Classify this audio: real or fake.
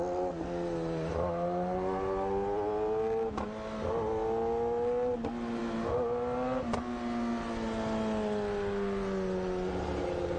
real